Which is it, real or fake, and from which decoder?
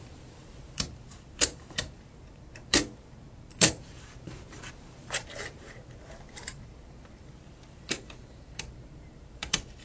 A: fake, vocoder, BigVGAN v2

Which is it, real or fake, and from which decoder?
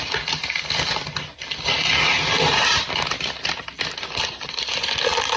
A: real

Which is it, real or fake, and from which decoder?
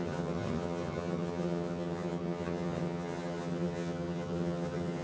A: fake, vocoder, HiFi-GAN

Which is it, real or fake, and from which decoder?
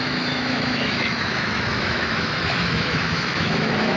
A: fake, autoencoder, DAC-VAE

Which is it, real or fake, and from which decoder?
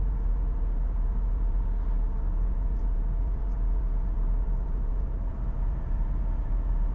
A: fake, vocoder, BigVGAN v2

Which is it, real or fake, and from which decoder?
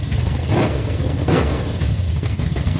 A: fake, codec, SNAC